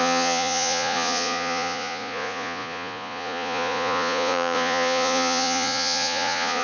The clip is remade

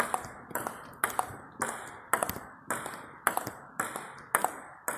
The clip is recorded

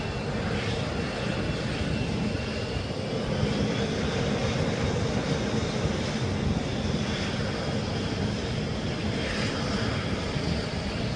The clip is recorded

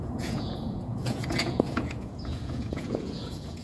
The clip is remade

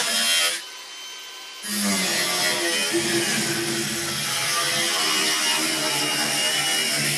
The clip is recorded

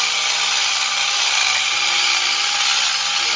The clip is recorded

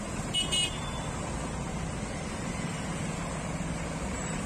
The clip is recorded